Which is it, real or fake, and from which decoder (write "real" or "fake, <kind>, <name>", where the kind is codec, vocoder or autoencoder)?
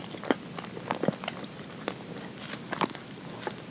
real